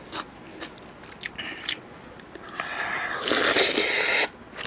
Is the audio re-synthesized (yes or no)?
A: no